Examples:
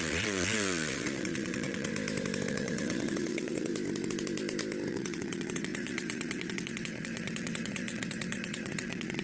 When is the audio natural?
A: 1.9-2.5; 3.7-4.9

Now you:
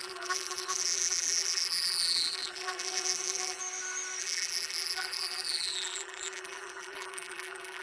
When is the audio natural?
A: 3.6-4.2

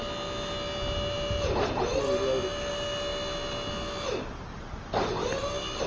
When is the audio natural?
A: 0.0-5.9